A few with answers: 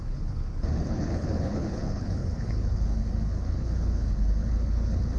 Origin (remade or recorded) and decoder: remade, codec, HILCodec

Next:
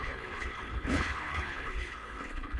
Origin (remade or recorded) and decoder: remade, codec, HILCodec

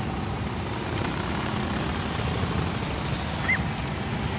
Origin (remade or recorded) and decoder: recorded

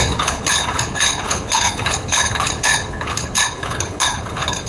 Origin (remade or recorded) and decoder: remade, codec, HILCodec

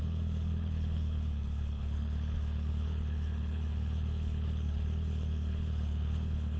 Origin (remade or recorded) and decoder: remade, codec, HILCodec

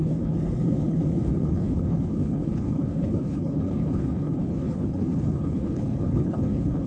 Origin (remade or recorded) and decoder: remade, codec, HILCodec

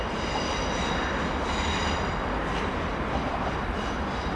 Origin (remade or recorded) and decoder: recorded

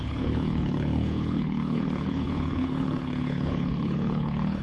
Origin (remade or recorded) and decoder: remade, codec, HILCodec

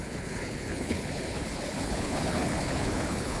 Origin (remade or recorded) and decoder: remade, codec, HILCodec